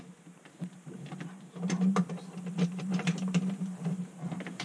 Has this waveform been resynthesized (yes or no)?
yes